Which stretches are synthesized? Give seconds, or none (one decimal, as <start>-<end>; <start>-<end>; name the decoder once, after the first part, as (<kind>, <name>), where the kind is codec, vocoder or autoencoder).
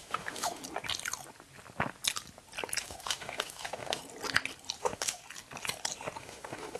0.0-0.6 (autoencoder, DAC-VAE); 2.8-4.0; 4.8-5.2; 6.2-6.8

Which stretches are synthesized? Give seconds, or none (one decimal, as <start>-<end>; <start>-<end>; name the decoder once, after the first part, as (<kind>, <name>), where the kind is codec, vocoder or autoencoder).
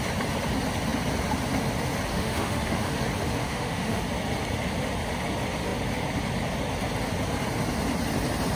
2.1-3.0 (autoencoder, DAC-VAE); 3.4-4.0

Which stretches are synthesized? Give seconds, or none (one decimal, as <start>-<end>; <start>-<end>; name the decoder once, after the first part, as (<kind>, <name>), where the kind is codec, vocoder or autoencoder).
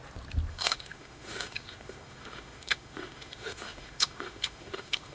0.5-5.1 (autoencoder, DAC-VAE)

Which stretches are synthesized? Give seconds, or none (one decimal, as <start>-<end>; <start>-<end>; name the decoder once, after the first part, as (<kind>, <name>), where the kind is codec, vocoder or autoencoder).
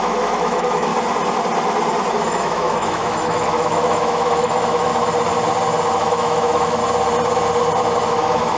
0.0-0.9 (autoencoder, DAC-VAE); 2.1-4.9; 5.9-6.8; 8.1-8.6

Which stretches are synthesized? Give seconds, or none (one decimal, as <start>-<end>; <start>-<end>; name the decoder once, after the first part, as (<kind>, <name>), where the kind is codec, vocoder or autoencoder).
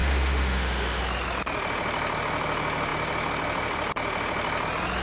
0.0-1.0 (autoencoder, DAC-VAE)